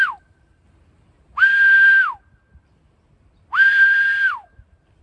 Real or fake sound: fake